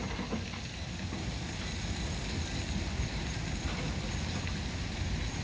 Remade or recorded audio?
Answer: recorded